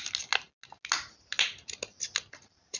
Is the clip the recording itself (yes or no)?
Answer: yes